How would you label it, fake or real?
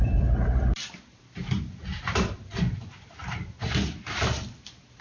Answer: real